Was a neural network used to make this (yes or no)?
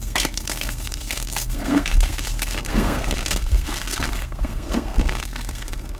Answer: yes